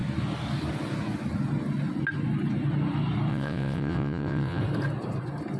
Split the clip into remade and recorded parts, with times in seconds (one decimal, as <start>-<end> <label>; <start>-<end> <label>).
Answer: 0.0-3.3 recorded; 3.3-4.6 remade; 4.6-5.6 recorded